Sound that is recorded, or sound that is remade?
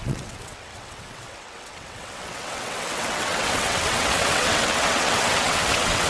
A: remade